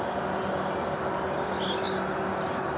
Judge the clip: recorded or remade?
recorded